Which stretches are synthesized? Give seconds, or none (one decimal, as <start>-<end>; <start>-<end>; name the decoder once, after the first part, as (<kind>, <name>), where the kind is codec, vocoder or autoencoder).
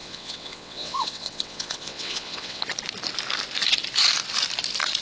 0.0-2.6 (vocoder, WaveNeXt)